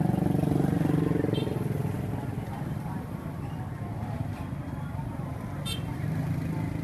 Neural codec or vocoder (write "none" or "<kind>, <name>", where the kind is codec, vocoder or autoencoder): none